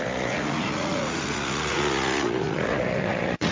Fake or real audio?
fake